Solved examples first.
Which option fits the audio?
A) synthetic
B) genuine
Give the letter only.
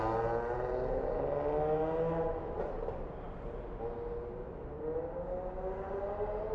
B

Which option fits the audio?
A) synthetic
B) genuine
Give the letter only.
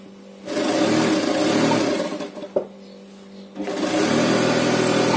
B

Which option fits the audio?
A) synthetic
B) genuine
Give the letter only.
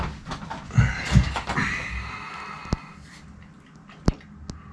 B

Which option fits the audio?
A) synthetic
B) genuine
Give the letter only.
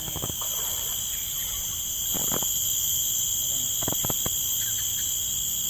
B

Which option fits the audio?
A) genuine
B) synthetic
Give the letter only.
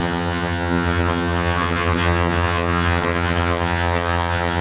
B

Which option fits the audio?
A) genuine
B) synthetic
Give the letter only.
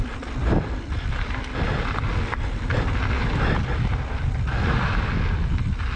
A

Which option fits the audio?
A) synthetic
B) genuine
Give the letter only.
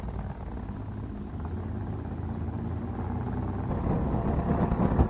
B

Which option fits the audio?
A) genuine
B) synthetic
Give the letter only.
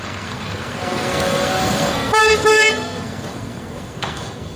B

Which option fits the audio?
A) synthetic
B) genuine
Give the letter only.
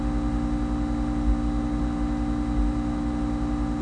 B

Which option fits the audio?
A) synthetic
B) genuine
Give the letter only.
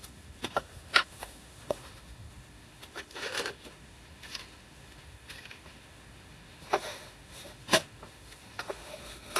A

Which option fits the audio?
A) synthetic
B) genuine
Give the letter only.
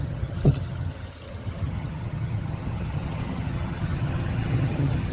A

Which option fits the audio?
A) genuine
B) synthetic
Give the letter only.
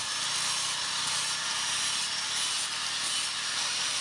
A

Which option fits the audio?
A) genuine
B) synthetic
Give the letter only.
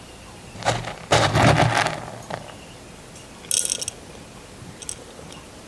A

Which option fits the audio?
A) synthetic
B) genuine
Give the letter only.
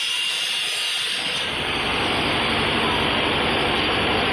A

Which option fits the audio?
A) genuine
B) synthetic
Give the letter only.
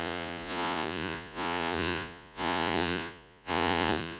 B